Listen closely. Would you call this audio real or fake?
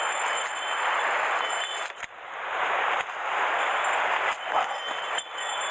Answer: real